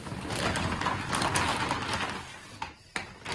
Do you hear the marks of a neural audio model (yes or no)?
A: no